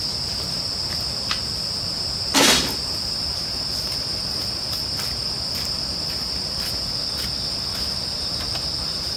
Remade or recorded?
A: recorded